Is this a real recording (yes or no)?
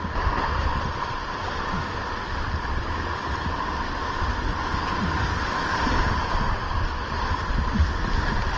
yes